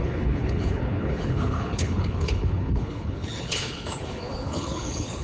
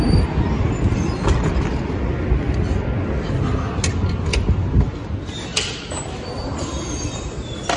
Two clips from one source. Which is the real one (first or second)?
second